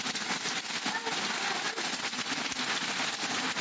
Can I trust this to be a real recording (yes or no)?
yes